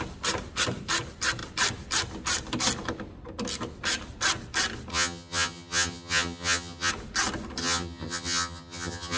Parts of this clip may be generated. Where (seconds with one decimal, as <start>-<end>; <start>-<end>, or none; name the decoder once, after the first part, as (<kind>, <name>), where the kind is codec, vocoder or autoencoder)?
4.9-6.9 (vocoder, HiFi-GAN); 7.6-9.2